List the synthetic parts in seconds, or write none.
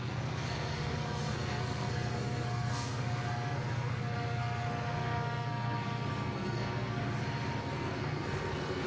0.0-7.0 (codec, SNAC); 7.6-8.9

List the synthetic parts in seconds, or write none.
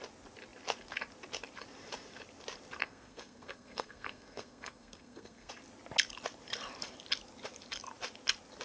2.8-5.5 (codec, SNAC)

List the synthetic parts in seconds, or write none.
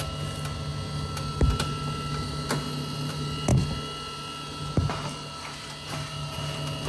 none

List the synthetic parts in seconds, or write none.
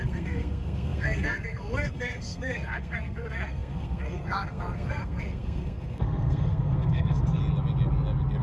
0.0-7.4 (codec, SNAC)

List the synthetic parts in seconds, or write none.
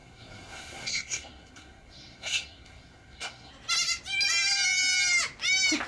0.0-3.5 (codec, SNAC)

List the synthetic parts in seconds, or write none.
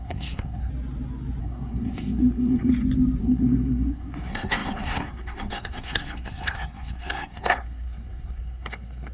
0.0-0.7 (codec, SNAC); 1.4-2.7; 3.2-9.1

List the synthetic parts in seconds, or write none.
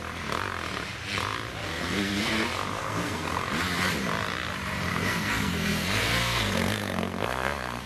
1.6-2.3 (codec, SNAC); 2.8-3.5; 4.9-7.9